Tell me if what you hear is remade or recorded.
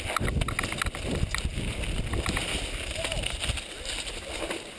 recorded